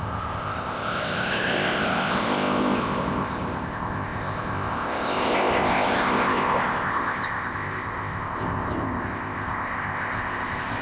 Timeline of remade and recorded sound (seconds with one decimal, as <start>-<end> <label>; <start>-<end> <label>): 0.0-10.8 remade